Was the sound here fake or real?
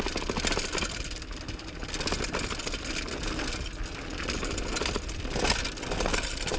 real